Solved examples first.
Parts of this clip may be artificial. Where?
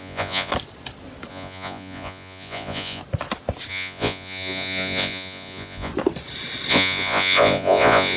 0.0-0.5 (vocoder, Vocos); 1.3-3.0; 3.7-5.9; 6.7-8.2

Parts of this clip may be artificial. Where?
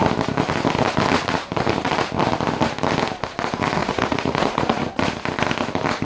3.8-4.9 (vocoder, Vocos)